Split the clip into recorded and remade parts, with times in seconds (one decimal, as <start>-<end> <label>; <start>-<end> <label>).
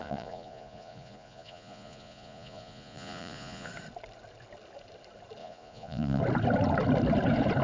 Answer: 0.0-3.7 remade; 3.7-5.4 recorded; 5.4-6.2 remade; 6.2-7.6 recorded